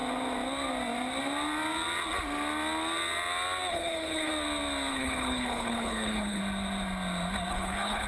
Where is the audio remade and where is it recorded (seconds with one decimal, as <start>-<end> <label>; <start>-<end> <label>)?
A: 0.0-3.7 recorded; 3.7-4.3 remade; 4.3-4.9 recorded; 4.9-6.4 remade; 6.4-7.5 recorded; 7.5-8.1 remade